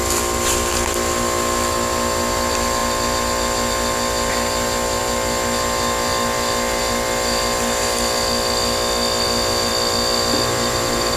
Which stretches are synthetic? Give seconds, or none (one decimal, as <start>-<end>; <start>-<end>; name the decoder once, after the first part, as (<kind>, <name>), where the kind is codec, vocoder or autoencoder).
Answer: 6.1-9.7 (vocoder, BigVGAN v2)